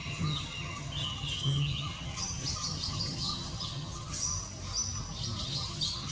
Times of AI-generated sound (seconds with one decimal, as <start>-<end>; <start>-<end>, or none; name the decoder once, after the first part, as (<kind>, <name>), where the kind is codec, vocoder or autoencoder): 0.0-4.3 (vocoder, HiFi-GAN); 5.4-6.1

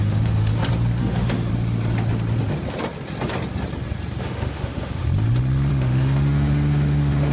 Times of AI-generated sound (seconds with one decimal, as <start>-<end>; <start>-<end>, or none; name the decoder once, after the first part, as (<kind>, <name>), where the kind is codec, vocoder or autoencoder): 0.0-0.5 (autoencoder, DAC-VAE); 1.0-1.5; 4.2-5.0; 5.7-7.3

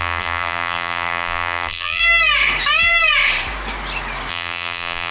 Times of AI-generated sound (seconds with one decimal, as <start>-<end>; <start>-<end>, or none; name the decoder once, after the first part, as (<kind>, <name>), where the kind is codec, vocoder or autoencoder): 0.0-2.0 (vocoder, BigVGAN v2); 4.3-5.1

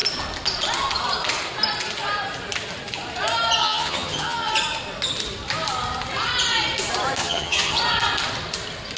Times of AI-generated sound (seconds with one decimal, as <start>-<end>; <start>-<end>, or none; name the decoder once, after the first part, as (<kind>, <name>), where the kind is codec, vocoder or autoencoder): 3.6-4.5 (vocoder, HiFi-GAN); 7.2-7.8